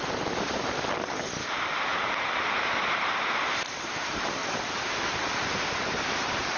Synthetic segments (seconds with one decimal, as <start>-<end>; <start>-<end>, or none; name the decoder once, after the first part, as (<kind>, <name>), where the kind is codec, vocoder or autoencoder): 0.0-4.4 (vocoder, BigVGAN v2); 5.2-6.6